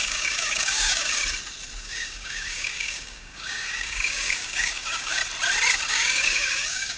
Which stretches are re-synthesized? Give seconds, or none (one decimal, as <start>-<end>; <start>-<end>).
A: 0.0-1.2; 1.8-5.2; 5.9-7.0